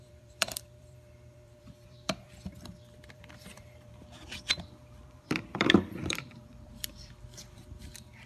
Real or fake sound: fake